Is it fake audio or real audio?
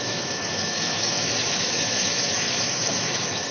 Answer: fake